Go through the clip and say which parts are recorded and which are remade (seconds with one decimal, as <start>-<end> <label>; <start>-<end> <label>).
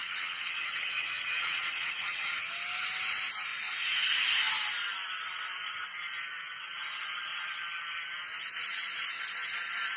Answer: 0.0-2.5 remade; 2.5-10.0 recorded